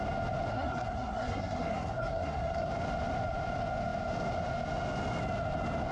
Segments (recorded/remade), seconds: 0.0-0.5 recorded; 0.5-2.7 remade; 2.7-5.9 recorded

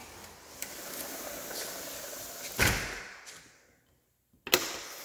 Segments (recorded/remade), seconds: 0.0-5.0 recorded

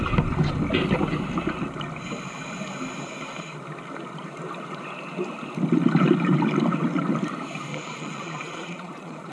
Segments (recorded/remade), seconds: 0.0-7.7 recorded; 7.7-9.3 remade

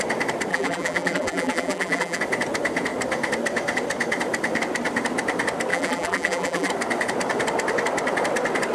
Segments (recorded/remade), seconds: 0.0-0.5 recorded; 0.5-2.2 remade; 2.2-5.7 recorded; 5.7-6.7 remade; 6.7-8.7 recorded